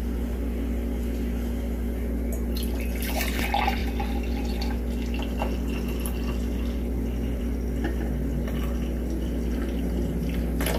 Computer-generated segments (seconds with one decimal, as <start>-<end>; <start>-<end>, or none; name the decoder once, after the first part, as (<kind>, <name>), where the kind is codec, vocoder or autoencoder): none